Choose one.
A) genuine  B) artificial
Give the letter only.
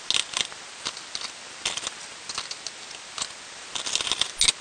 A